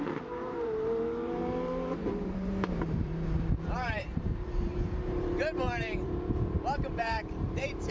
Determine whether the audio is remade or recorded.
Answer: remade